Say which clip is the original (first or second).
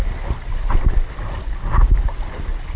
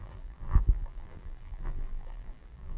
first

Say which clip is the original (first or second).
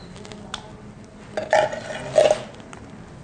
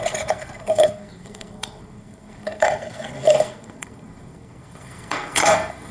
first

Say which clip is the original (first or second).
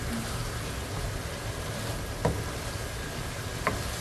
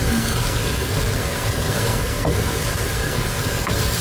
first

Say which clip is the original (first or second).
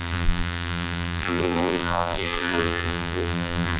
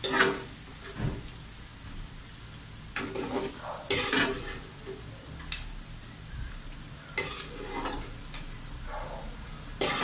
second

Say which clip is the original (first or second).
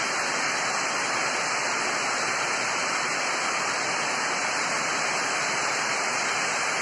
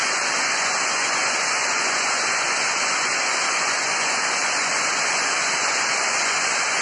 first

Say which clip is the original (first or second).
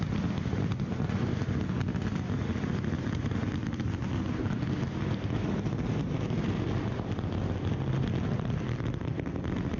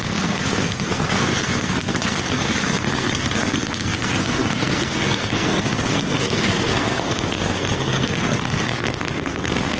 first